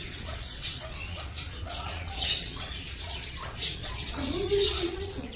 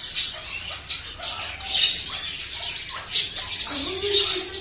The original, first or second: second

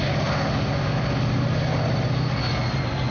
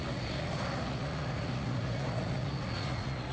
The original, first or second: first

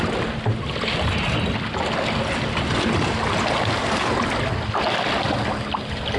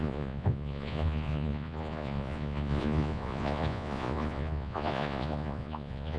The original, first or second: first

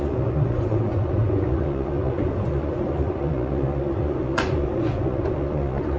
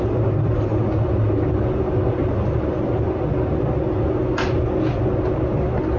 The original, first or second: second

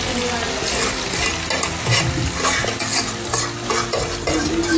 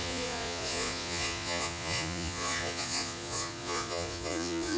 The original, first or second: first